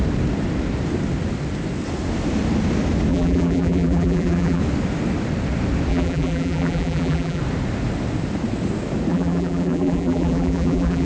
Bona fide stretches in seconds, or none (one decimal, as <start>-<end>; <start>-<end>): 0.0-3.1; 4.6-5.9; 7.4-9.1